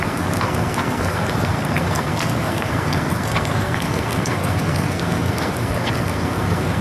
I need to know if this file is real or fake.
fake